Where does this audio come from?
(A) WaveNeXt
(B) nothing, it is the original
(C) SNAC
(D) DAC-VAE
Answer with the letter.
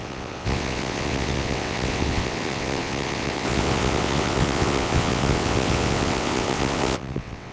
A